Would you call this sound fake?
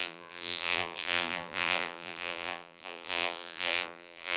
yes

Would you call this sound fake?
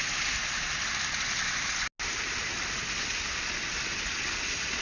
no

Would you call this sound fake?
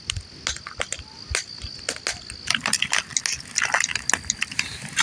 no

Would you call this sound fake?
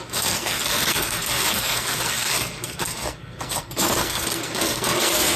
yes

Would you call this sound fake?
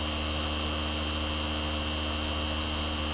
no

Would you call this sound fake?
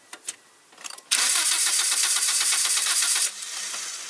yes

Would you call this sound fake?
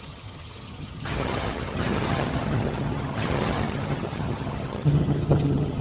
yes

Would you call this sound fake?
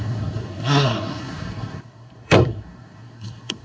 yes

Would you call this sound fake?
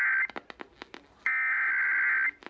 no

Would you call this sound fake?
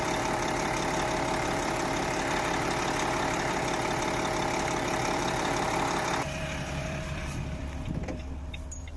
yes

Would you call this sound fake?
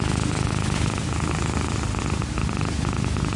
no